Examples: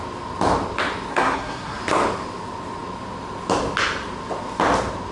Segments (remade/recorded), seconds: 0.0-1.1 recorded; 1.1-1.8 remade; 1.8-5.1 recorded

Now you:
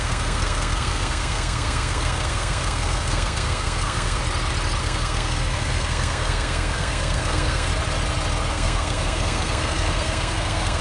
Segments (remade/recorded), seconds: 0.0-4.2 remade; 4.2-4.8 recorded; 4.8-7.7 remade; 7.7-8.5 recorded; 8.5-10.8 remade

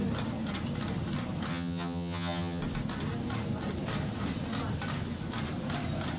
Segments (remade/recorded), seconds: 0.0-1.5 recorded; 1.5-2.6 remade; 2.6-6.2 recorded